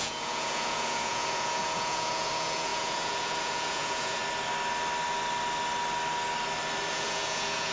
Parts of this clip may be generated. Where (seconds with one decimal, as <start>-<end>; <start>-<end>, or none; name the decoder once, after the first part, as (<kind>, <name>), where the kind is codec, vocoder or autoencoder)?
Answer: 0.0-4.2 (vocoder, Vocos); 6.9-7.7